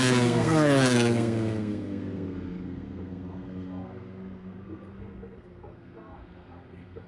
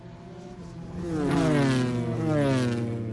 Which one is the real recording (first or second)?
second